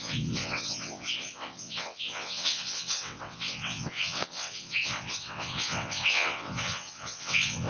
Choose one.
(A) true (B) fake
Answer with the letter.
B